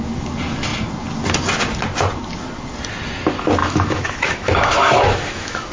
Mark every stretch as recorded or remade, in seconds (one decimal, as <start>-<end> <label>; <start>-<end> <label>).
0.0-3.6 recorded; 3.6-5.7 remade